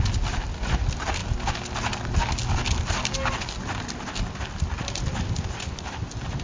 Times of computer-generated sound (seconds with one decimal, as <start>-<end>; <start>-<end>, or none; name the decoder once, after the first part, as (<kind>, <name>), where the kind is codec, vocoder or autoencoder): none